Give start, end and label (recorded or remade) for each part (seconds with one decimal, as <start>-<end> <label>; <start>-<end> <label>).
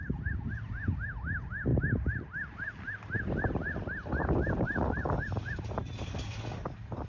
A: 0.0-7.1 recorded